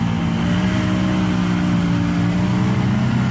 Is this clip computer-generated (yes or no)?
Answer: no